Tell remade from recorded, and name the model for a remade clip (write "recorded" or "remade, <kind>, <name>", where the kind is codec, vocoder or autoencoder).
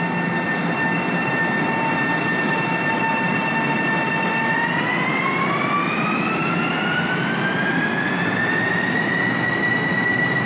recorded